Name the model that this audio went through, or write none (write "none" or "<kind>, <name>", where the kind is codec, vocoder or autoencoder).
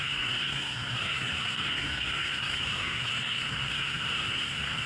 codec, SNAC